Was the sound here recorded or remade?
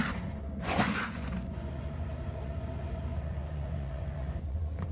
remade